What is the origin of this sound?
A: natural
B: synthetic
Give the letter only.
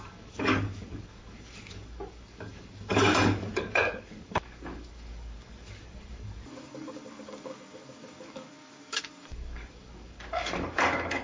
B